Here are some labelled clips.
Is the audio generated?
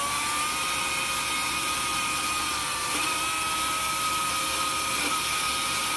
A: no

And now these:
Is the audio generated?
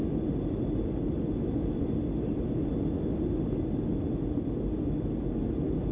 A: no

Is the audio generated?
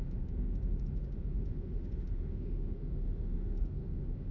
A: yes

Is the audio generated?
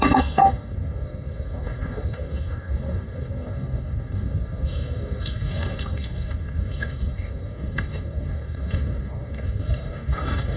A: yes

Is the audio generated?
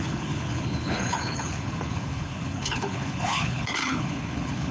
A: yes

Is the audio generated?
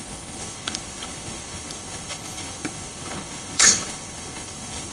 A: yes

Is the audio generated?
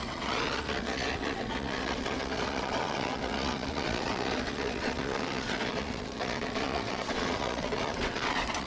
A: yes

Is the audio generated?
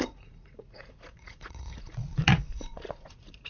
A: yes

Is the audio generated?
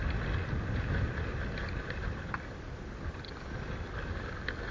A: no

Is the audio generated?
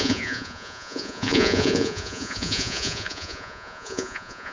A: yes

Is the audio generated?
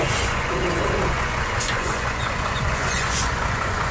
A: yes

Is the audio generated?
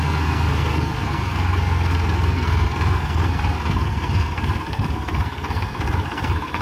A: yes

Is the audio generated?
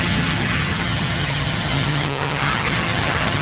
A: yes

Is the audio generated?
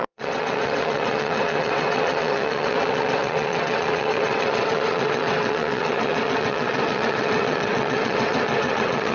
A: yes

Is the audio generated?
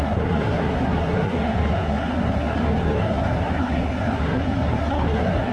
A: yes